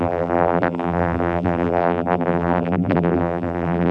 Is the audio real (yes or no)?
no